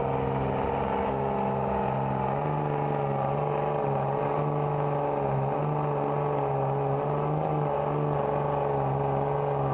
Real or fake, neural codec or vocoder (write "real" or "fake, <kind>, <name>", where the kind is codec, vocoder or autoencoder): real